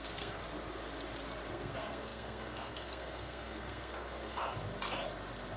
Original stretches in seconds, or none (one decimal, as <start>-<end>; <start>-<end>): 0.4-1.5; 4.4-5.6